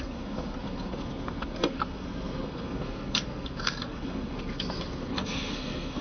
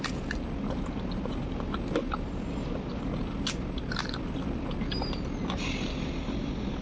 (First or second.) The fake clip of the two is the first